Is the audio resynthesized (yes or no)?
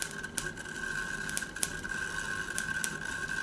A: no